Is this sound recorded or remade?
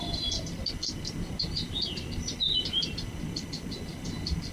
recorded